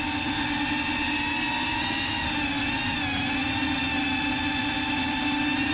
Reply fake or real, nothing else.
real